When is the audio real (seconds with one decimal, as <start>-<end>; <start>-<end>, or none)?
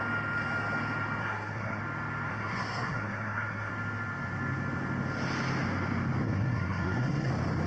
0.0-1.2; 1.8-2.3; 3.7-6.2; 7.3-7.7